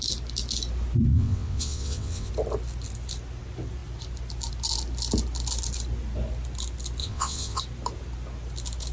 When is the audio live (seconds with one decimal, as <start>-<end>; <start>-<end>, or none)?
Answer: 0.0-1.1; 2.3-7.0; 7.6-8.9